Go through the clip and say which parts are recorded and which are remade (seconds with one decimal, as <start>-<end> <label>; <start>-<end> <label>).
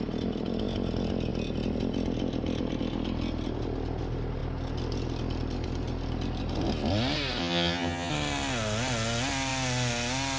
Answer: 0.0-7.4 recorded; 7.4-8.1 remade; 8.1-10.4 recorded